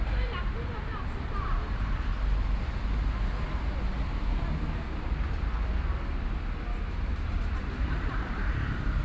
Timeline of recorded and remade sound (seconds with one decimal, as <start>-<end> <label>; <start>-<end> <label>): 0.0-2.1 remade; 2.1-6.8 recorded; 6.8-9.0 remade